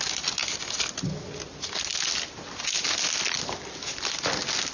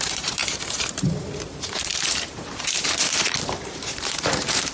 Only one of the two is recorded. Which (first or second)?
first